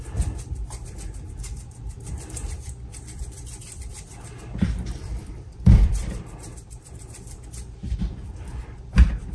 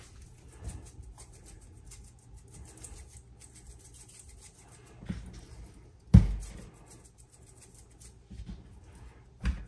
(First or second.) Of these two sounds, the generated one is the first